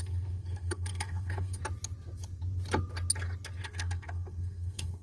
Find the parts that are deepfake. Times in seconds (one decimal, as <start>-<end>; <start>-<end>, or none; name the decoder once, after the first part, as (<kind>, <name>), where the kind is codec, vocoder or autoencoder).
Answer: 0.0-1.6 (codec, SNAC); 3.6-5.0